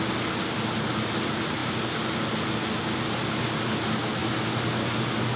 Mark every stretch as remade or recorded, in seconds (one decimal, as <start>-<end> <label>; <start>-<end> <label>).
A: 0.0-5.4 recorded